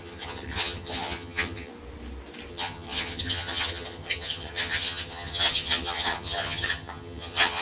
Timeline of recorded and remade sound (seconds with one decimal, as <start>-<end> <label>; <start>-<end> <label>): 0.0-1.7 remade; 1.7-2.5 recorded; 2.5-7.6 remade